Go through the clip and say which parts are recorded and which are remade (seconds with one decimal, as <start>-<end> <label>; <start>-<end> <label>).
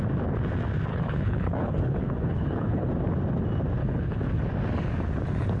0.0-0.9 recorded; 0.9-2.9 remade; 2.9-3.8 recorded; 3.8-4.5 remade; 4.5-5.6 recorded